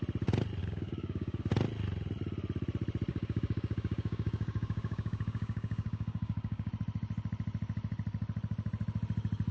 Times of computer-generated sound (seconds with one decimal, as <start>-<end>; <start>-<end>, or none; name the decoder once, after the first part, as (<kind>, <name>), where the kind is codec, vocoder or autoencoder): 0.6-1.4 (codec, DAC); 3.1-6.7